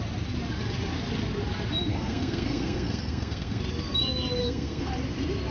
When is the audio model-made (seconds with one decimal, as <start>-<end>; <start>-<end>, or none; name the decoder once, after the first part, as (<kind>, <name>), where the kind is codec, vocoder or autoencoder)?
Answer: 1.9-3.6 (codec, SNAC); 4.4-4.9